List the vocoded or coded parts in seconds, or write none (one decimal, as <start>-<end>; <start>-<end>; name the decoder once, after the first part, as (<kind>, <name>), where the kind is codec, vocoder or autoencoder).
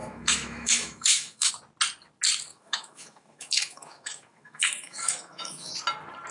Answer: 0.0-1.5 (autoencoder, DAC-VAE); 2.5-5.7